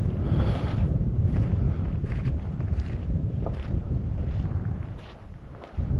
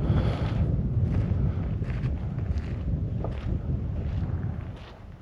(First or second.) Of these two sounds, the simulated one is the first